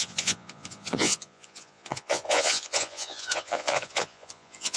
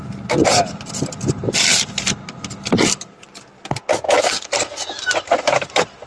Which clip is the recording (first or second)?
second